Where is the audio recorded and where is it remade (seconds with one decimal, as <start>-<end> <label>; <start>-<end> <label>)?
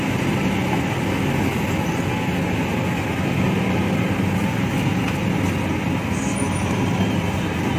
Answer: 0.0-7.8 recorded